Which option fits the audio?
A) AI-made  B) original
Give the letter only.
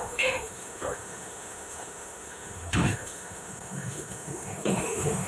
A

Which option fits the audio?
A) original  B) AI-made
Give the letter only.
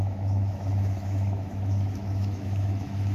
B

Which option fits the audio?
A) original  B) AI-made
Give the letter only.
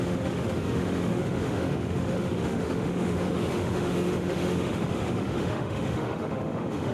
B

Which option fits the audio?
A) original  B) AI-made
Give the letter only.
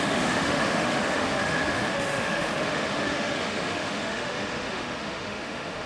B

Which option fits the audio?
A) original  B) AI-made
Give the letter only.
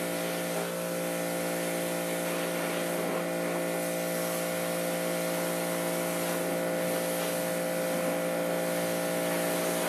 A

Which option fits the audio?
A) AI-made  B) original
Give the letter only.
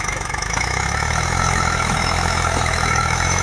A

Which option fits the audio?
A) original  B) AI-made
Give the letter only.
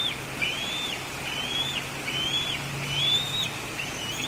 A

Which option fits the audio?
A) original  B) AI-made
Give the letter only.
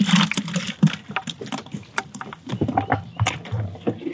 A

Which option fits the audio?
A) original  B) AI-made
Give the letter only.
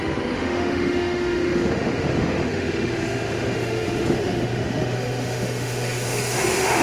B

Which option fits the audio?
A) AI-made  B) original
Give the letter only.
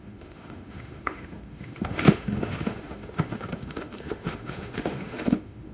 A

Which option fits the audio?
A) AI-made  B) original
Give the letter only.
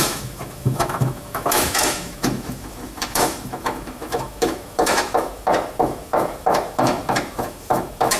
A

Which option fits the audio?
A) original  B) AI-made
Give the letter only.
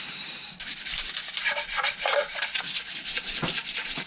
A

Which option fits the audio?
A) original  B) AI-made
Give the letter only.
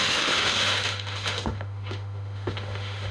B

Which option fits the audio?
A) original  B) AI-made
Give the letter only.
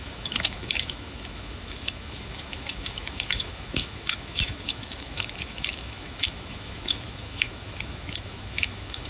B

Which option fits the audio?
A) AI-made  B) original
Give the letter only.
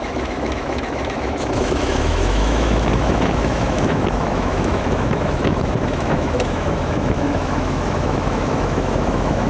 A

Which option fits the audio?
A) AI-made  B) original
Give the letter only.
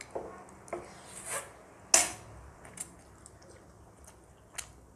B